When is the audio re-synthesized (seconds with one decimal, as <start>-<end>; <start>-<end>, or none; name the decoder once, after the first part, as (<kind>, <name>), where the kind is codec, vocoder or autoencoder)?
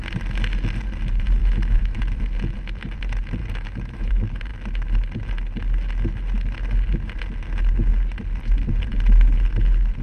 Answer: 1.4-2.0 (autoencoder, DAC-VAE); 3.4-4.1